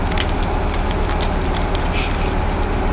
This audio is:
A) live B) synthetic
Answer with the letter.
A